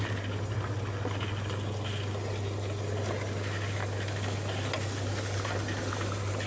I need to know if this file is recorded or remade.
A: recorded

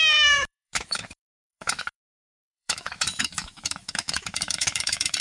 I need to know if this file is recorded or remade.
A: remade